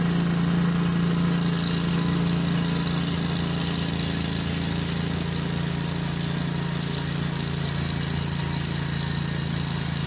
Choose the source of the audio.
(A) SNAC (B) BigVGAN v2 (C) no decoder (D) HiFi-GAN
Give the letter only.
C